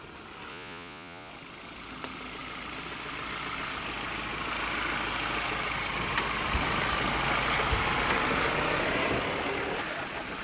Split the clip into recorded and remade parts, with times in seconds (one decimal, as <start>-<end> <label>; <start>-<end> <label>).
0.0-0.5 recorded; 0.5-1.3 remade; 1.3-10.4 recorded

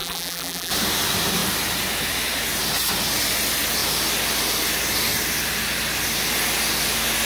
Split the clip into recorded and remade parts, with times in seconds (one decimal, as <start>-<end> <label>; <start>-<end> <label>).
0.0-0.7 remade; 0.7-7.3 recorded

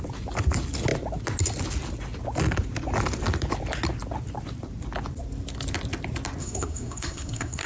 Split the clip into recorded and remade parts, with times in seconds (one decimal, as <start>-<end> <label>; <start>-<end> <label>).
0.0-6.4 recorded; 6.4-7.7 remade

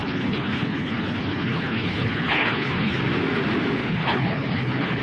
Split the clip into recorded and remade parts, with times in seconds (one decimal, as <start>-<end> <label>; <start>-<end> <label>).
0.0-3.0 remade; 3.0-3.8 recorded; 3.8-5.0 remade

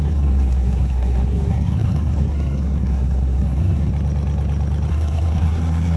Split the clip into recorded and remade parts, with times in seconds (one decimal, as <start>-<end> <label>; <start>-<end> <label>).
0.0-3.9 remade; 3.9-4.9 recorded; 4.9-6.0 remade

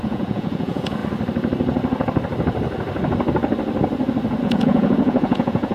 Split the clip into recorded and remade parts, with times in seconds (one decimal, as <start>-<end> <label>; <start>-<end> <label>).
0.0-1.0 remade; 1.0-4.4 recorded; 4.4-5.7 remade

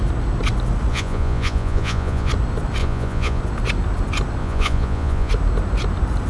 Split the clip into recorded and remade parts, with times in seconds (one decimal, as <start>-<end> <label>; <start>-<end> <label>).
0.0-0.9 recorded; 0.9-2.3 remade; 2.3-2.8 recorded; 2.8-3.4 remade; 3.4-4.4 recorded; 4.4-5.3 remade; 5.3-6.3 recorded

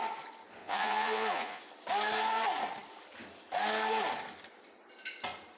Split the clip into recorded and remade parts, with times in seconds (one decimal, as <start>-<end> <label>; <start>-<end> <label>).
0.0-0.6 recorded; 0.6-1.6 remade; 1.6-5.6 recorded